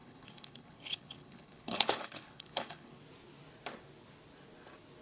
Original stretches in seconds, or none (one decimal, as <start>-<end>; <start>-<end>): 3.0-5.0